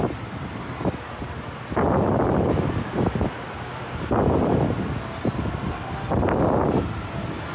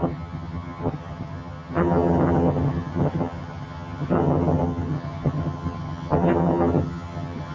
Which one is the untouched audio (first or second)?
first